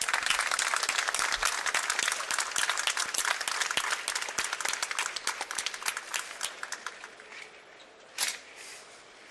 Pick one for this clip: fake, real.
real